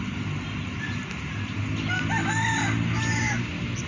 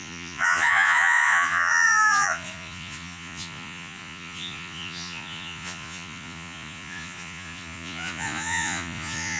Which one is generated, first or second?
second